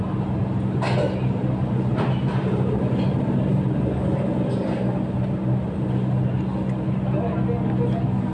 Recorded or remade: recorded